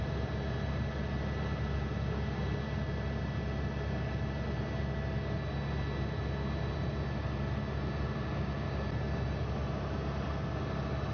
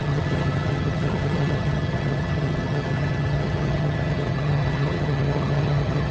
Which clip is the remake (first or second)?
second